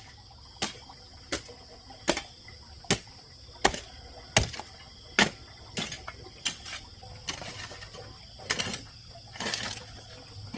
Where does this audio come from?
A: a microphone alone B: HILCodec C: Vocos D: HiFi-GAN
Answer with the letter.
A